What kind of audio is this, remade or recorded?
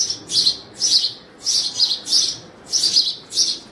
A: recorded